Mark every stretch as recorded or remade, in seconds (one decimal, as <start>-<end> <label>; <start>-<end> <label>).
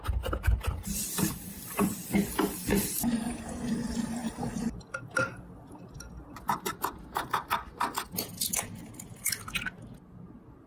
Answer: 0.0-2.7 recorded; 2.7-3.5 remade; 3.5-10.7 recorded